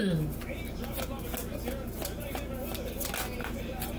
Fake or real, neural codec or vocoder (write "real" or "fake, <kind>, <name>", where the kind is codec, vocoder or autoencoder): real